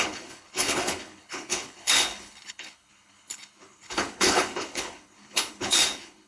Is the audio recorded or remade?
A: remade